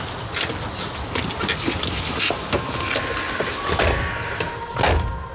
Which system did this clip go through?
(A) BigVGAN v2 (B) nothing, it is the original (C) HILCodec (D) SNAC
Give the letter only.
B